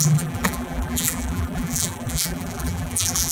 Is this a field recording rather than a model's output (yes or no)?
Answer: no